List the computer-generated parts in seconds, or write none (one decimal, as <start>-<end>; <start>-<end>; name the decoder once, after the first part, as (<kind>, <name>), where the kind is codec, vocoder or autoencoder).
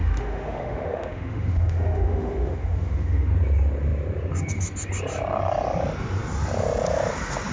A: 0.0-3.3 (autoencoder, DAC-VAE)